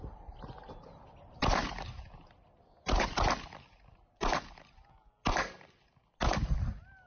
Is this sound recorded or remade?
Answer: recorded